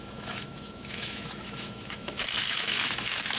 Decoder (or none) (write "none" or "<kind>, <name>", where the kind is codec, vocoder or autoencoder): autoencoder, DAC-VAE